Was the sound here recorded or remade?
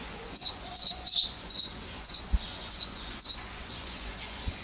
remade